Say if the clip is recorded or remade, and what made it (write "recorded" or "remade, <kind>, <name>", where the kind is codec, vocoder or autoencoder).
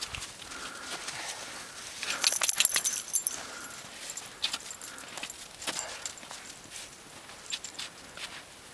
recorded